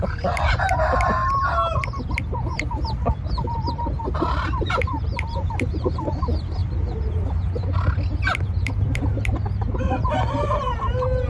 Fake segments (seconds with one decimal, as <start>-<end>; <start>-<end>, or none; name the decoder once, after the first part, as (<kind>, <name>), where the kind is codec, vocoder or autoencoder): 0.0-1.2 (vocoder, BigVGAN v2); 3.3-6.6; 8.2-11.3